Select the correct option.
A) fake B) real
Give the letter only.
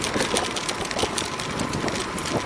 B